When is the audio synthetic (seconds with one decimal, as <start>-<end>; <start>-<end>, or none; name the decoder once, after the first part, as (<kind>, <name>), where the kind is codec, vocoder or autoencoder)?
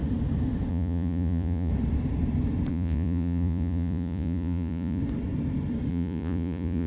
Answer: 0.7-1.7 (vocoder, Vocos); 2.7-5.0; 5.9-6.9